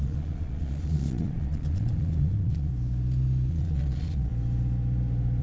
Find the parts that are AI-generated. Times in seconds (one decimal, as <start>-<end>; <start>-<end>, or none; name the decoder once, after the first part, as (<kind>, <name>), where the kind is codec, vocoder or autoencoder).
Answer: 0.0-2.7 (vocoder, Vocos); 3.5-4.3